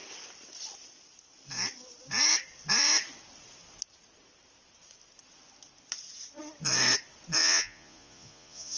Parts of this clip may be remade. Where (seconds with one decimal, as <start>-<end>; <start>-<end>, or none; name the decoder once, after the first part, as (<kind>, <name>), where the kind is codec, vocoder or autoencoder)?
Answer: 7.4-8.8 (vocoder, Vocos)